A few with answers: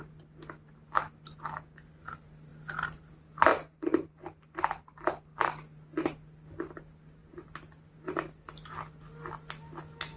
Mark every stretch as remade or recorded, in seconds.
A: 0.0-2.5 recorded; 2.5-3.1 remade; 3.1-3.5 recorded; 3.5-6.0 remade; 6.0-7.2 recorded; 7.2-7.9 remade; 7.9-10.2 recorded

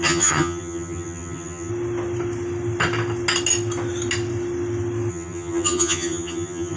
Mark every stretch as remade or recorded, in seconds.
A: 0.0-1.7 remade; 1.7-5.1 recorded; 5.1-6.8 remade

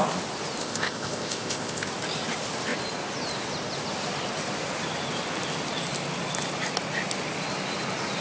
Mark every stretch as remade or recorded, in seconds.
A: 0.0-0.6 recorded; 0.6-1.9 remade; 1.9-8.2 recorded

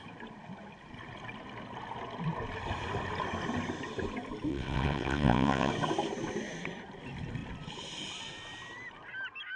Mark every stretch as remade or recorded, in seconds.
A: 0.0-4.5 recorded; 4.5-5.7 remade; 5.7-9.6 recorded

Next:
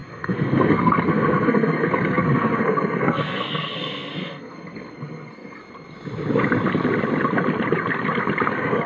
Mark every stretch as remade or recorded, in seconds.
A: 0.0-5.6 remade; 5.6-8.5 recorded; 8.5-8.9 remade

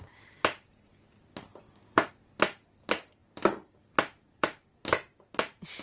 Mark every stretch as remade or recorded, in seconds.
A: 0.0-1.5 recorded; 1.5-2.1 remade; 2.1-3.2 recorded; 3.2-4.8 remade; 4.8-5.8 recorded

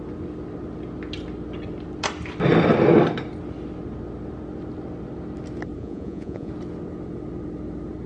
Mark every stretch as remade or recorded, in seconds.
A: 0.0-5.8 recorded; 5.8-6.5 remade; 6.5-8.1 recorded

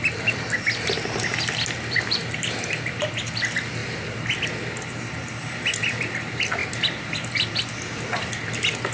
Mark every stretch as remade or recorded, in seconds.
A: 0.0-2.2 recorded; 2.2-3.0 remade; 3.0-3.8 recorded; 3.8-4.4 remade; 4.4-6.6 recorded; 6.6-7.6 remade; 7.6-8.9 recorded